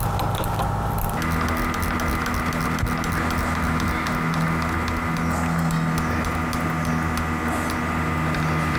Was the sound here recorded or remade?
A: recorded